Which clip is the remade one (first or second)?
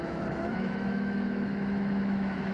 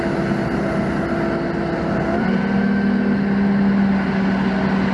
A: first